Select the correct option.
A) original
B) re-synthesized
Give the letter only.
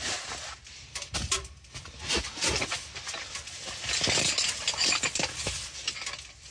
A